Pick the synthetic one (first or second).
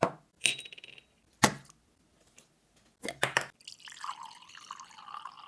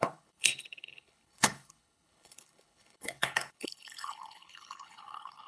second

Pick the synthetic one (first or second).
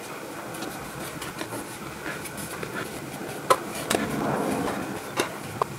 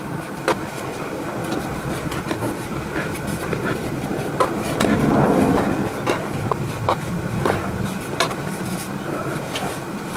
second